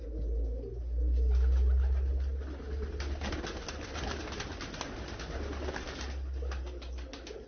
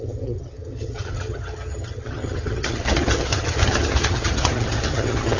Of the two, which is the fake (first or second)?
second